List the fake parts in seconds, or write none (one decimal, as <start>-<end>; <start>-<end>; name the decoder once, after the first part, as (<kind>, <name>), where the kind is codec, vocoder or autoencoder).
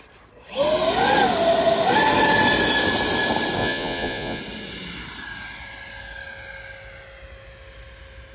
3.6-4.4 (vocoder, Vocos)